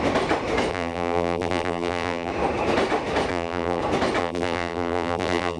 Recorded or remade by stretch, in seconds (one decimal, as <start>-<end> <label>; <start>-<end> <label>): 0.0-0.7 recorded; 0.7-2.3 remade; 2.3-3.3 recorded; 3.3-3.8 remade; 3.8-4.2 recorded; 4.2-5.6 remade